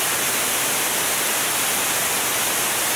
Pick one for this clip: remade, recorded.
recorded